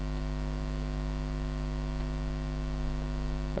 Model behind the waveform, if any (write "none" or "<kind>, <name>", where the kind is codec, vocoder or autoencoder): none